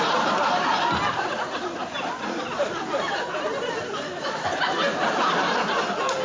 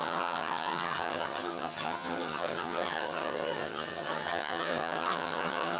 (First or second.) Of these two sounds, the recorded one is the first